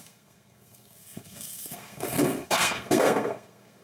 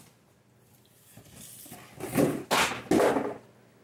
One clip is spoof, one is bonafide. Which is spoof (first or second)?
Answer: first